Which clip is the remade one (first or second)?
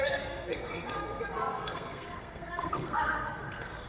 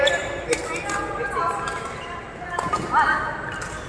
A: first